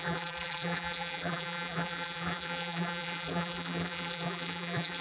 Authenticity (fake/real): fake